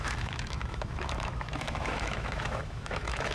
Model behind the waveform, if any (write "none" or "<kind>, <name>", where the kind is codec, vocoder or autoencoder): autoencoder, DAC-VAE